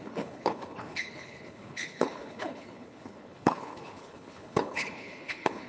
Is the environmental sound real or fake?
fake